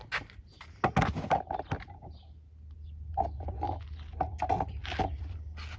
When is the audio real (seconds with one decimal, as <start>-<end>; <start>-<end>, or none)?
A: 0.0-5.8